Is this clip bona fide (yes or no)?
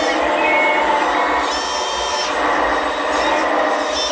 yes